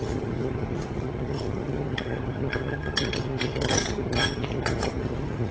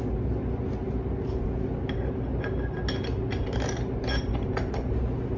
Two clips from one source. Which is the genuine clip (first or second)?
second